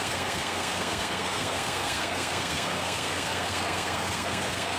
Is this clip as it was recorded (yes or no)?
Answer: no